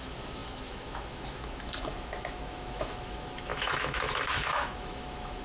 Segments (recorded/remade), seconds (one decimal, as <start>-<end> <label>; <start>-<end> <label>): 0.0-5.4 remade